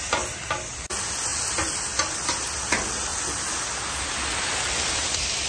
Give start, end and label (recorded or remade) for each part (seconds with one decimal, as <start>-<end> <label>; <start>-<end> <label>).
0.0-1.3 remade; 1.3-2.0 recorded; 2.0-3.1 remade; 3.1-4.8 recorded; 4.8-5.5 remade